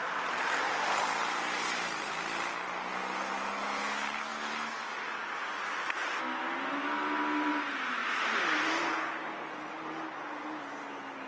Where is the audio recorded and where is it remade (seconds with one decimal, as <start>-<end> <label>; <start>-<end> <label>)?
0.0-8.0 recorded; 8.0-8.8 remade; 8.8-11.3 recorded